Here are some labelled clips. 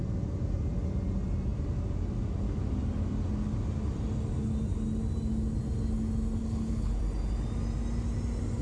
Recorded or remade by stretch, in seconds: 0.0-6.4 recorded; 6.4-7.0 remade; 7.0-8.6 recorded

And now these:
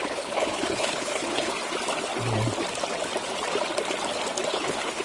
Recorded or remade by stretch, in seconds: 0.0-1.5 remade; 1.5-4.5 recorded; 4.5-5.0 remade

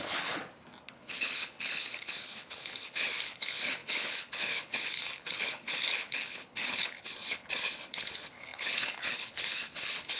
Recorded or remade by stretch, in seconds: 0.0-0.4 remade; 0.4-0.9 recorded; 0.9-10.2 remade

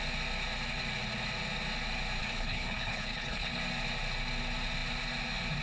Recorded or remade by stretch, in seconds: 0.0-2.2 recorded; 2.2-3.6 remade; 3.6-5.6 recorded